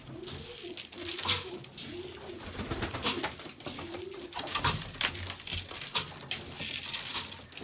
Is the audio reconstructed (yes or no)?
no